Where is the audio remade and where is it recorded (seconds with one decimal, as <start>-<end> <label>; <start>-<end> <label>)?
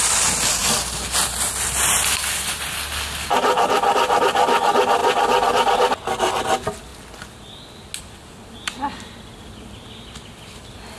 0.0-0.6 recorded; 0.6-2.5 remade; 2.5-11.0 recorded